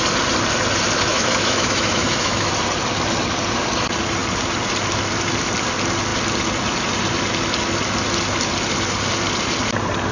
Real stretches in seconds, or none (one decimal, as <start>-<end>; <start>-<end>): 0.0-1.1; 2.5-10.1